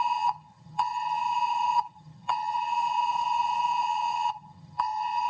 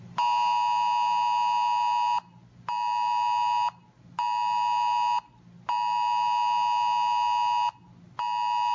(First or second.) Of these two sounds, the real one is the second